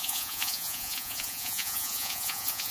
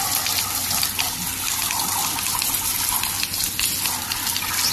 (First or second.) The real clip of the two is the second